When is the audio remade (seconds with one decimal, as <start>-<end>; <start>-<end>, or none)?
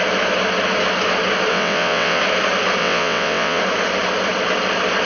1.5-2.2; 2.8-3.6